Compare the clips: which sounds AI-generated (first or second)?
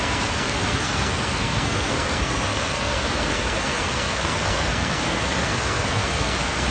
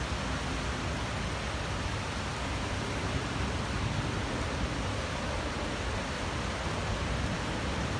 first